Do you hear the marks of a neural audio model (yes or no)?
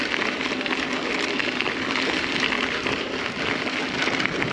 no